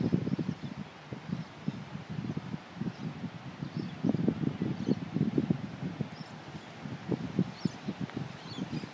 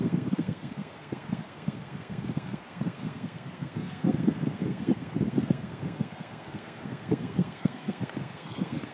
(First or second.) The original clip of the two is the first